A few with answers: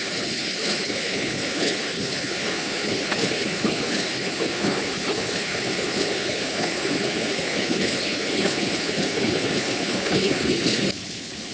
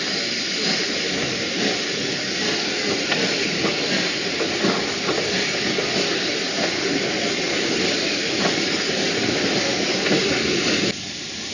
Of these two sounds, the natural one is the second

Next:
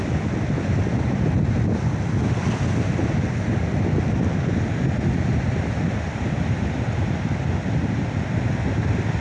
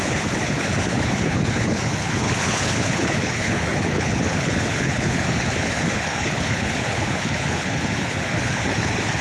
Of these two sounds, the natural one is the first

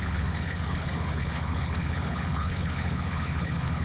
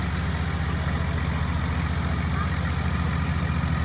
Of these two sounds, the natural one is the second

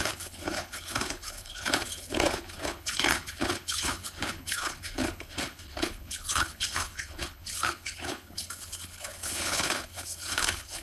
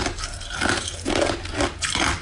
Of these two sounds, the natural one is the second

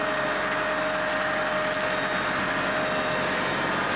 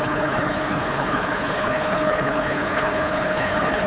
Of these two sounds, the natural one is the first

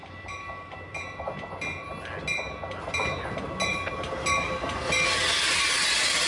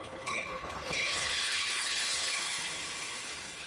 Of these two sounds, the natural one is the first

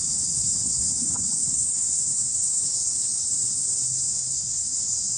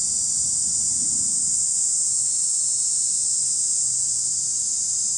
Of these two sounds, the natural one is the second